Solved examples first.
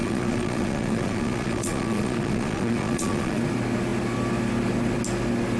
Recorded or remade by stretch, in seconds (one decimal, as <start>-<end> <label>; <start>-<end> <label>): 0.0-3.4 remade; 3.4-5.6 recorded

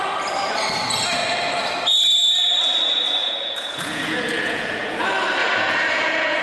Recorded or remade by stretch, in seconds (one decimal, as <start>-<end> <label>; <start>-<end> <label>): 0.0-3.2 recorded; 3.2-5.0 remade; 5.0-5.4 recorded; 5.4-6.4 remade

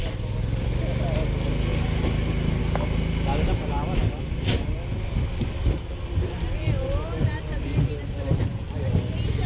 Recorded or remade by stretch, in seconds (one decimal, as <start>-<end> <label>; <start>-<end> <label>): 0.0-9.5 recorded